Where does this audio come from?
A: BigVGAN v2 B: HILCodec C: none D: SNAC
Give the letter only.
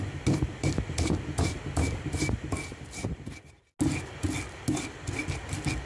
C